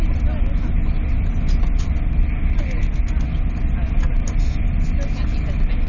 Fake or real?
real